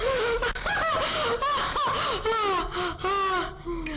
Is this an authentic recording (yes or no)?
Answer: yes